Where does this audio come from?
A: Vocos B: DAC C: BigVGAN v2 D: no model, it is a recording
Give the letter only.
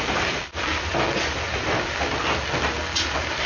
D